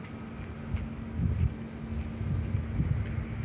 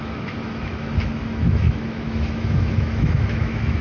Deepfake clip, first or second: second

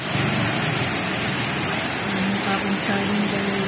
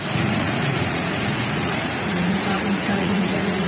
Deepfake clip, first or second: second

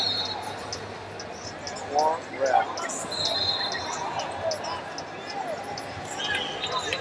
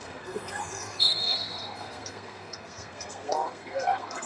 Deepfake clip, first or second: second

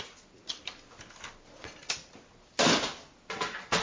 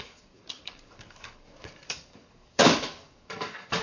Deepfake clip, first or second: second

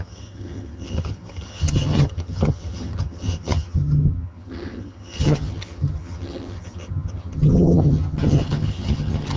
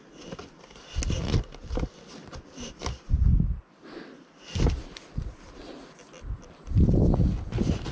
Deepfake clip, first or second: first